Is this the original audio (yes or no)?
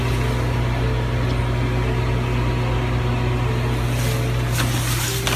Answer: yes